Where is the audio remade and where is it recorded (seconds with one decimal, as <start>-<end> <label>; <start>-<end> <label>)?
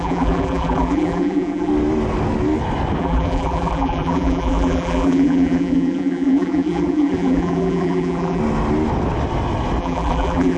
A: 0.0-1.7 remade; 1.7-3.0 recorded; 3.0-8.4 remade; 8.4-9.8 recorded; 9.8-10.6 remade